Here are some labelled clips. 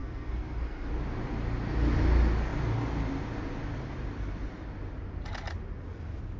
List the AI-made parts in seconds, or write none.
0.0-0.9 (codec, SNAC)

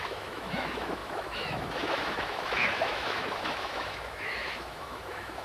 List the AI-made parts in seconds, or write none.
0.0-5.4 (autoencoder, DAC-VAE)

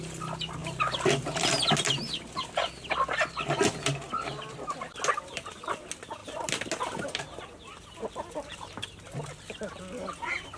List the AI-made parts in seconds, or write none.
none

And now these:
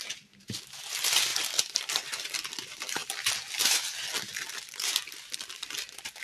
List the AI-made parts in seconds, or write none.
1.3-2.5 (vocoder, BigVGAN v2)

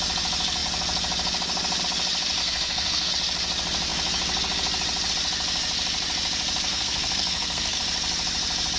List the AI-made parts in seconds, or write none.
2.4-3.1 (codec, SNAC); 6.7-7.8